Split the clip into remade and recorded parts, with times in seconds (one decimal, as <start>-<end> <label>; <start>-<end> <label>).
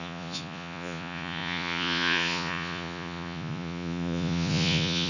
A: 0.0-5.1 remade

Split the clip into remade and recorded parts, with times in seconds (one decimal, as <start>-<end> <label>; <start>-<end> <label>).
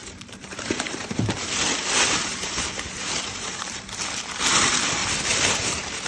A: 0.0-3.7 remade; 3.7-5.0 recorded; 5.0-6.1 remade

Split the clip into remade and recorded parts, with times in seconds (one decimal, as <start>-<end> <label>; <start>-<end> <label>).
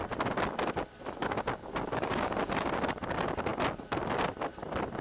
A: 0.0-1.2 recorded; 1.2-2.3 remade; 2.3-5.0 recorded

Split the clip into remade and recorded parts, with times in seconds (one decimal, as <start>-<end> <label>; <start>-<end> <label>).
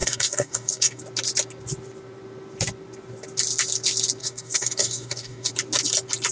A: 0.0-1.0 remade; 1.0-4.2 recorded; 4.2-5.5 remade; 5.5-6.3 recorded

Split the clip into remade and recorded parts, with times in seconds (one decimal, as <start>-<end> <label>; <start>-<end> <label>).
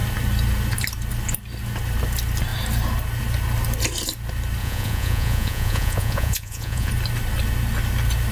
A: 0.0-4.6 recorded; 4.6-6.9 remade; 6.9-8.3 recorded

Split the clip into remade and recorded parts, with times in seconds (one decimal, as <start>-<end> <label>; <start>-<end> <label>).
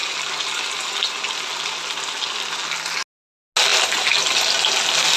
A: 0.0-5.2 recorded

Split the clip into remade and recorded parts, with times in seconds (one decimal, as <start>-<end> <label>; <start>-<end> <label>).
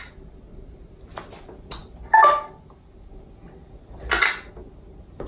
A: 0.0-5.3 recorded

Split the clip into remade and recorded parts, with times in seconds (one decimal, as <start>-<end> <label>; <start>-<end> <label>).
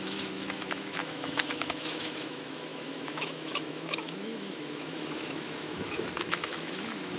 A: 0.0-7.2 remade